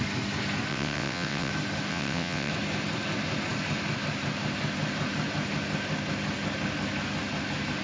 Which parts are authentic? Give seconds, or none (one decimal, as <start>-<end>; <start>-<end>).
0.0-0.7; 1.5-1.9; 2.5-7.8